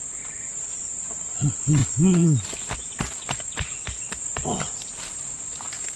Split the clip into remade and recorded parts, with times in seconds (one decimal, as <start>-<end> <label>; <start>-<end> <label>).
0.0-6.0 remade